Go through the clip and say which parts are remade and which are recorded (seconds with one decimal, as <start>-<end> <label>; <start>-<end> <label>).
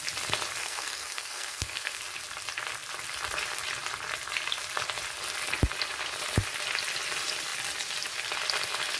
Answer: 0.0-0.6 recorded; 0.6-2.0 remade; 2.0-9.0 recorded